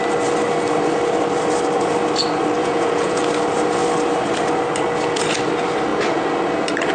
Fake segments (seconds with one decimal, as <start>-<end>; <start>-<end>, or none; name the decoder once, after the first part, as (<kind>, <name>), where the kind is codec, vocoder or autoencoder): 2.6-3.2 (vocoder, Vocos)

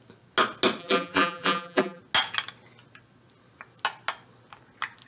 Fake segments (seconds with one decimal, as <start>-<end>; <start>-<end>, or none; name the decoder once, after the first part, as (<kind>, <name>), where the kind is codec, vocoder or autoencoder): 0.8-2.0 (vocoder, BigVGAN v2)

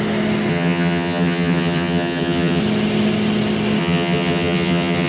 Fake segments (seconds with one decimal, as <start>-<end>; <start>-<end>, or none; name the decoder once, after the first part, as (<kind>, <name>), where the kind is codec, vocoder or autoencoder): 0.5-2.6 (vocoder, HiFi-GAN); 3.8-5.1

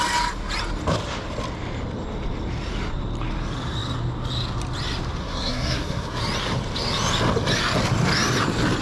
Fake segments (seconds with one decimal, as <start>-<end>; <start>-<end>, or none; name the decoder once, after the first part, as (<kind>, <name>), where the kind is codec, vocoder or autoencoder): 5.2-6.2 (codec, SNAC)

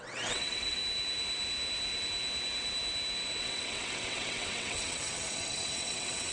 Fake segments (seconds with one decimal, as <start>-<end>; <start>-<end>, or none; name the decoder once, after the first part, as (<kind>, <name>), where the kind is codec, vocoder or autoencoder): 0.0-0.8 (vocoder, WaveNeXt); 3.4-6.3

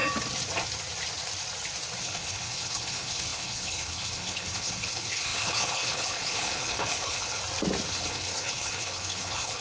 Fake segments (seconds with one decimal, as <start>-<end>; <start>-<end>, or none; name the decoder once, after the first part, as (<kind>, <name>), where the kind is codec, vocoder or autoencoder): 2.0-7.4 (codec, HILCodec); 7.9-9.6